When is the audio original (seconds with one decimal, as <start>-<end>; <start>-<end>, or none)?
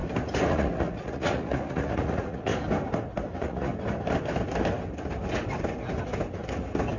0.0-0.5; 2.5-3.3; 3.7-7.0